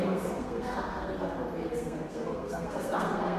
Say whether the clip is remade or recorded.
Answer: remade